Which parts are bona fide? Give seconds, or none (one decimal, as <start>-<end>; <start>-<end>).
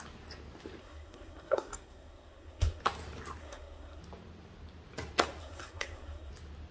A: 0.0-0.8; 2.8-3.4; 4.0-5.4; 6.3-6.7